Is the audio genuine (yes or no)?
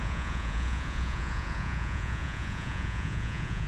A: no